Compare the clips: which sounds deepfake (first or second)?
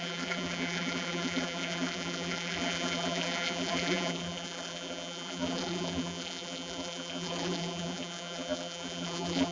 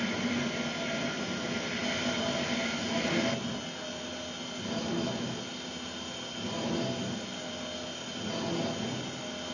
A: first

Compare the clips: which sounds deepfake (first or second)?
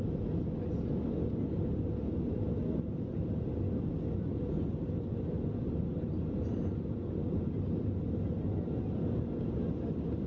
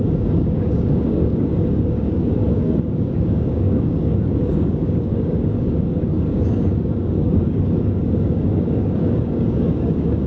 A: second